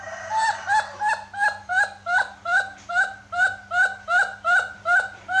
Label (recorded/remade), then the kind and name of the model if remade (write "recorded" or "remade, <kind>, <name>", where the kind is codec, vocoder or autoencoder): recorded